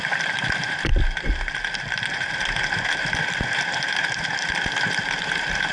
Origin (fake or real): real